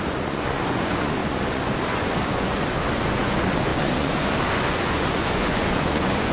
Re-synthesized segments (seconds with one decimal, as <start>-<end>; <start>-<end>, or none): 0.0-6.3